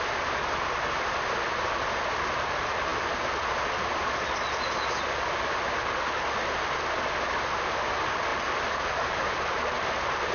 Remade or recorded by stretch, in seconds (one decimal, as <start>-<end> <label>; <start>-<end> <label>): 0.0-10.3 recorded

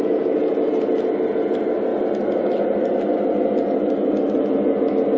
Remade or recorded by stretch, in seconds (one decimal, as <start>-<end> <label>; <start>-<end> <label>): 0.0-5.2 recorded

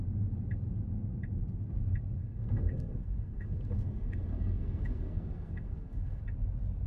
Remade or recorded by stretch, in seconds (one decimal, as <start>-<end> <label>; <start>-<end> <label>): 0.0-2.2 recorded; 2.2-6.2 remade; 6.2-6.9 recorded

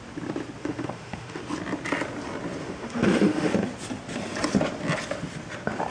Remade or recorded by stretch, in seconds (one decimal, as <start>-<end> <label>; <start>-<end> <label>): 0.0-0.6 recorded; 0.6-1.4 remade; 1.4-2.6 recorded; 2.6-3.5 remade; 3.5-5.9 recorded

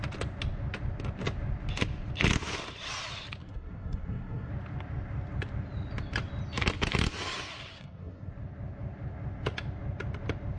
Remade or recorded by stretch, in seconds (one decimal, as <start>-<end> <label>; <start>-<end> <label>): 0.0-3.4 recorded; 3.4-4.5 remade; 4.5-7.7 recorded; 7.7-8.3 remade; 8.3-10.6 recorded

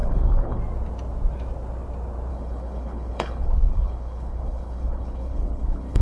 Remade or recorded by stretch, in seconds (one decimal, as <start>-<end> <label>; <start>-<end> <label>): 0.0-0.6 remade; 0.6-2.3 recorded; 2.3-6.0 remade